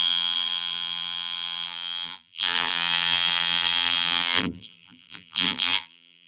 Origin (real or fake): fake